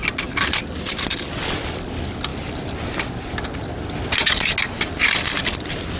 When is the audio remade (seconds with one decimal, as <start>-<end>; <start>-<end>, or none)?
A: 0.0-1.2